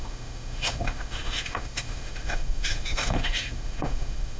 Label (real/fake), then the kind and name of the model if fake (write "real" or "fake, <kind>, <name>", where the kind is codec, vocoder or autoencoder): fake, autoencoder, DAC-VAE